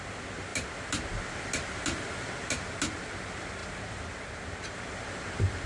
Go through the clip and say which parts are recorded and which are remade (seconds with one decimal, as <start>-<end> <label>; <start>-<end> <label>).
0.0-5.7 recorded